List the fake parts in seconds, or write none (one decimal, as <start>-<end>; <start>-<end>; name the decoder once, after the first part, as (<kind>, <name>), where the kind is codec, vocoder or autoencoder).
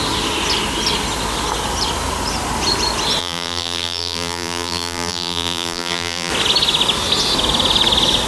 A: 3.2-6.3 (vocoder, BigVGAN v2)